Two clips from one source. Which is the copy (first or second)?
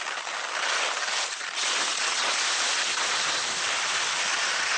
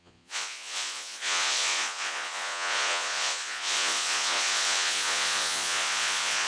second